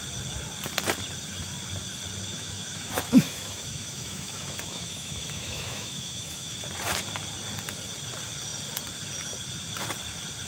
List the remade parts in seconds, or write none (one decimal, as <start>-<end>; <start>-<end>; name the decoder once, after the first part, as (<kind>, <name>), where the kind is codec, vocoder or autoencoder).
2.3-6.6 (autoencoder, DAC-VAE)